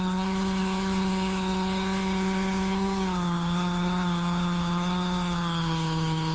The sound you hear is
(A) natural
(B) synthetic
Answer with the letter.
B